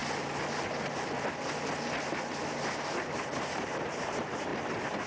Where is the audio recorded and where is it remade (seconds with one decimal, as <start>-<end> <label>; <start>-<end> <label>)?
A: 0.0-2.0 recorded; 2.0-2.5 remade; 2.5-3.1 recorded; 3.1-4.5 remade; 4.5-5.1 recorded